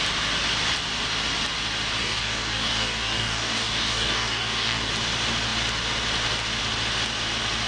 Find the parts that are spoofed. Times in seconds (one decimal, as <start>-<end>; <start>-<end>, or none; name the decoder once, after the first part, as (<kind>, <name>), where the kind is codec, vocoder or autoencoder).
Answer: 2.0-4.9 (codec, DAC)